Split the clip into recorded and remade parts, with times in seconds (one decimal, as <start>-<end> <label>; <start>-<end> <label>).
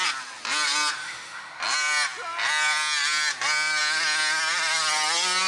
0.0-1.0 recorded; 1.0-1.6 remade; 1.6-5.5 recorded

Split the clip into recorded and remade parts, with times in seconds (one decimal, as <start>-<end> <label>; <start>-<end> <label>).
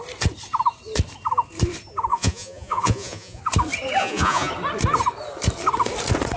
0.0-2.1 recorded; 2.1-3.4 remade; 3.4-4.0 recorded; 4.0-4.5 remade; 4.5-6.4 recorded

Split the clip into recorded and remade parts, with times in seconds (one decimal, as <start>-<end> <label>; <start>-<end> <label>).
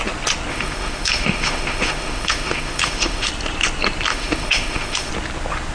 0.0-0.5 recorded; 0.5-3.3 remade; 3.3-4.1 recorded; 4.1-5.1 remade; 5.1-5.7 recorded